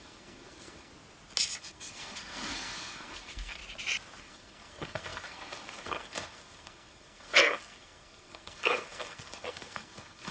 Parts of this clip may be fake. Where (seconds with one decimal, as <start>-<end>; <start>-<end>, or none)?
0.0-0.9; 1.6-3.6; 4.2-10.3